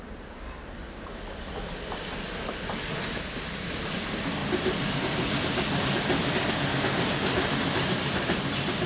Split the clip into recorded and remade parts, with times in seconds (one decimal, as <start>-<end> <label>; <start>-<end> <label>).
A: 0.0-8.9 recorded